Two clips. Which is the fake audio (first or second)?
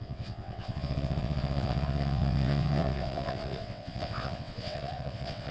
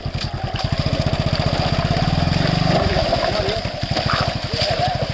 first